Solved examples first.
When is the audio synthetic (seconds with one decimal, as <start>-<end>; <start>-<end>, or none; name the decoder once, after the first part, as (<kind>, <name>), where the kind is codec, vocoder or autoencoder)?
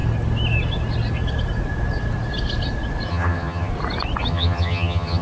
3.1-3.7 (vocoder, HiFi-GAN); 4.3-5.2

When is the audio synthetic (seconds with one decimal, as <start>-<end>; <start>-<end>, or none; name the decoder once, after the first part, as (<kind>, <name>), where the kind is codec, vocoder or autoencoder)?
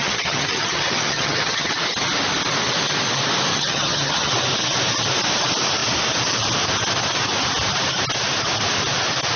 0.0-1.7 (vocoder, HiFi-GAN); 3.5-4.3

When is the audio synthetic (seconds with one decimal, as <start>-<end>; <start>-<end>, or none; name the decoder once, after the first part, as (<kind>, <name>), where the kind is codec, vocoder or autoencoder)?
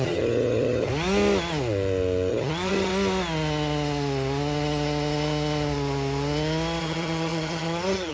0.0-0.9 (vocoder, HiFi-GAN); 2.3-2.9; 6.8-8.1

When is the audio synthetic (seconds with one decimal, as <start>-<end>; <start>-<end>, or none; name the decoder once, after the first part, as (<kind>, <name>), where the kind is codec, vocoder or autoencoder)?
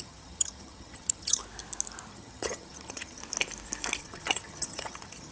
0.0-1.4 (vocoder, HiFi-GAN); 2.1-3.2; 4.0-5.3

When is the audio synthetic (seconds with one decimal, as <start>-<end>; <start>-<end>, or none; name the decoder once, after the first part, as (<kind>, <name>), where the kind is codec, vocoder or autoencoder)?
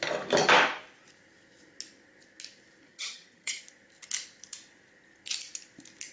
2.9-3.6 (vocoder, HiFi-GAN)